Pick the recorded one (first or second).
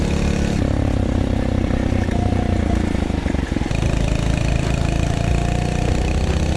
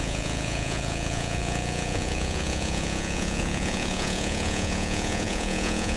first